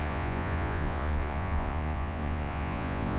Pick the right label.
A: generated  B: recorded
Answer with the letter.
A